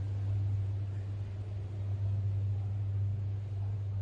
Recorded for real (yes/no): yes